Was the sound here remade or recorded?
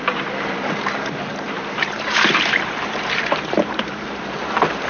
remade